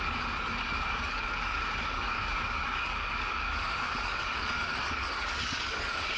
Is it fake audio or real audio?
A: fake